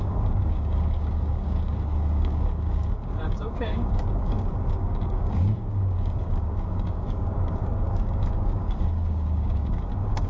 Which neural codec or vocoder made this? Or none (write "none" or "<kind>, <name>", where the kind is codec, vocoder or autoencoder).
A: codec, DAC